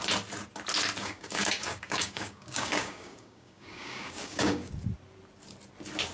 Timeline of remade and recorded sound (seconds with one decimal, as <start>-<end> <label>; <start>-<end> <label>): 0.0-1.0 recorded; 1.0-4.7 remade; 4.7-6.1 recorded